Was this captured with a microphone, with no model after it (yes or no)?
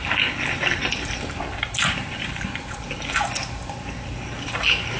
yes